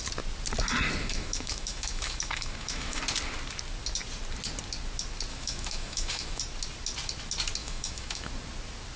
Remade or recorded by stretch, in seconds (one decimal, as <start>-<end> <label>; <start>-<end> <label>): 0.0-1.0 recorded; 1.0-3.0 remade; 3.0-5.3 recorded; 5.3-6.4 remade; 6.4-7.6 recorded; 7.6-8.3 remade; 8.3-9.0 recorded

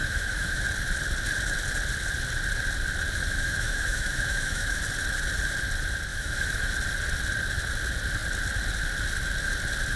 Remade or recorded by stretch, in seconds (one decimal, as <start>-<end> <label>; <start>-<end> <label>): 0.0-0.6 remade; 0.6-3.2 recorded; 3.2-4.8 remade; 4.8-6.1 recorded; 6.1-6.7 remade; 6.7-10.0 recorded

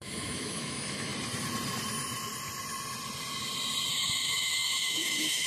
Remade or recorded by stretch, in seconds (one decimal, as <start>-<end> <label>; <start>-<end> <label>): 0.0-1.1 remade; 1.1-3.9 recorded; 3.9-5.5 remade

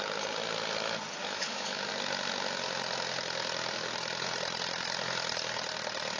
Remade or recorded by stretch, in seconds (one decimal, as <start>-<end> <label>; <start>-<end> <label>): 0.0-1.2 recorded; 1.2-1.9 remade; 1.9-6.2 recorded

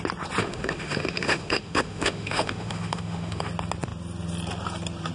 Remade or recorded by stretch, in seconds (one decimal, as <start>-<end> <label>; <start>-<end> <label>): 0.0-0.4 recorded; 0.4-3.5 remade; 3.5-5.1 recorded